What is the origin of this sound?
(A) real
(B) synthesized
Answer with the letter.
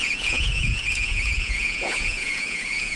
B